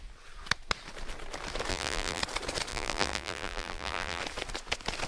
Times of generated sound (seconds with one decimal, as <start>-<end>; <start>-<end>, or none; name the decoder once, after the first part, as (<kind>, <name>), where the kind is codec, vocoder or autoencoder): 1.7-2.2 (vocoder, BigVGAN v2); 2.7-4.2